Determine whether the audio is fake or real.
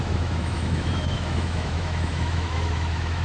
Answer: fake